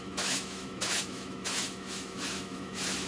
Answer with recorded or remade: remade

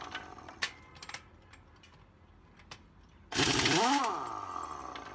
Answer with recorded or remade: recorded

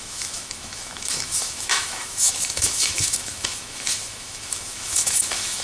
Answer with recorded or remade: remade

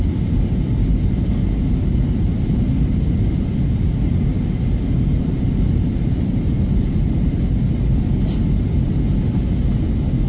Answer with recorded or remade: recorded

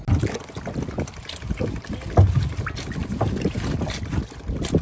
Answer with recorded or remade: recorded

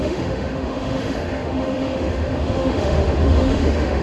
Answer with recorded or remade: remade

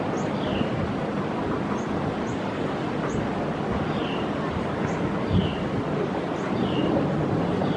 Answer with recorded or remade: recorded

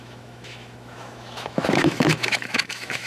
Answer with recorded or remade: remade